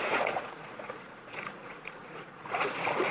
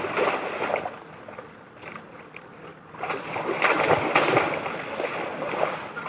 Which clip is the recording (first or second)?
second